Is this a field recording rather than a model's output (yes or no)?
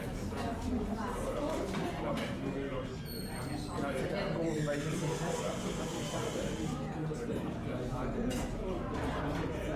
yes